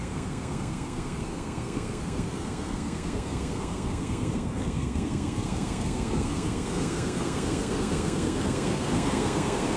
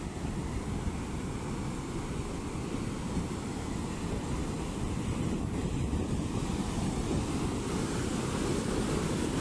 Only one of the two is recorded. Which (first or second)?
second